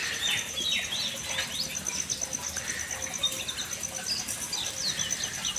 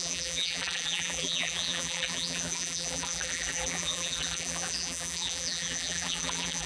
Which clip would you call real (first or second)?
first